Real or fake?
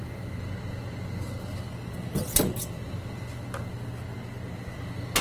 real